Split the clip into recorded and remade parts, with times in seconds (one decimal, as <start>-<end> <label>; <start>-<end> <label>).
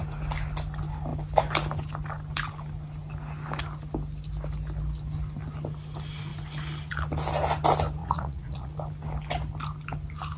0.0-8.0 recorded; 8.0-8.7 remade; 8.7-10.4 recorded